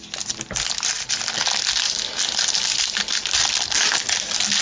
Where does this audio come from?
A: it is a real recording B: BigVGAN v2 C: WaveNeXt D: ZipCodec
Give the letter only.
A